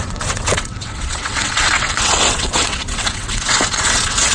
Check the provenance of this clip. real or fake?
fake